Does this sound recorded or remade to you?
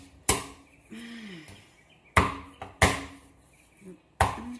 recorded